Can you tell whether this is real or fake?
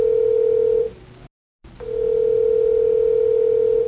real